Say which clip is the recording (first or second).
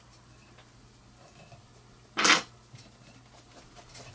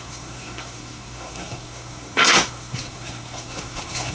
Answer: first